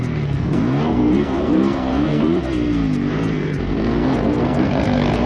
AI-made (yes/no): yes